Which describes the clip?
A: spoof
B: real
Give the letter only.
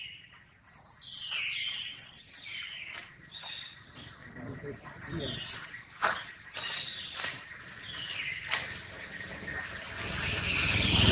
A